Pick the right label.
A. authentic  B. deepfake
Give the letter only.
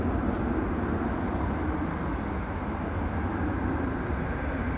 A